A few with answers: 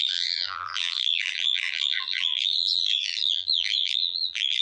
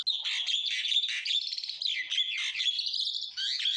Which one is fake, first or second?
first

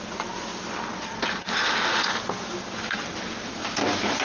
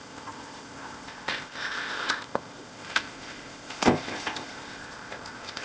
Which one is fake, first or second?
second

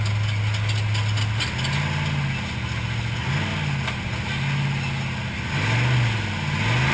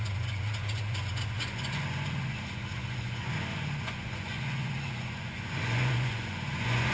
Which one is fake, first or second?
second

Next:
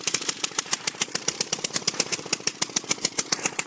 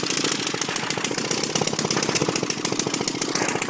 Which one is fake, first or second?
first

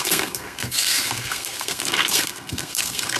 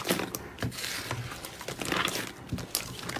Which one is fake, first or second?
first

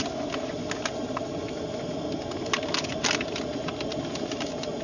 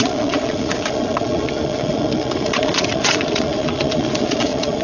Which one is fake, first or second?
second